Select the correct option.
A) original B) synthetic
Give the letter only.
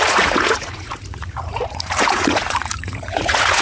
B